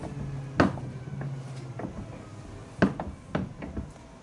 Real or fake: real